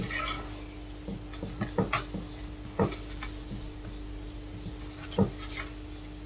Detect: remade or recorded recorded